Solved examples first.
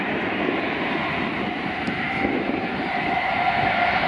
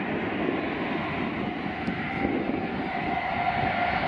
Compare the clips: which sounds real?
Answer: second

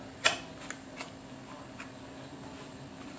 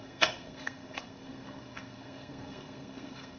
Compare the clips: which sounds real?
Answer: first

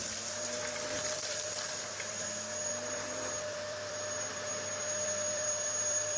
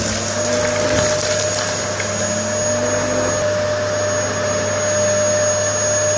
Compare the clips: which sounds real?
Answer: second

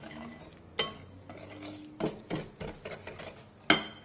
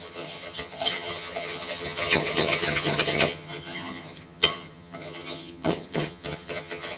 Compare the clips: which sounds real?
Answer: first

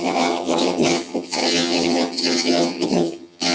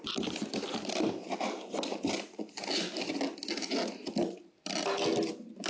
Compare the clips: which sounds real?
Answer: second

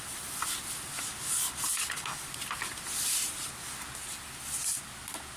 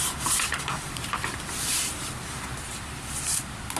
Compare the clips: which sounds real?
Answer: first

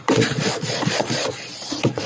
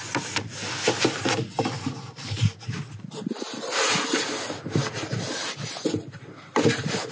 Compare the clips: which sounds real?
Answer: second